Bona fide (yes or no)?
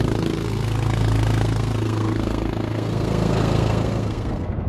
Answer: no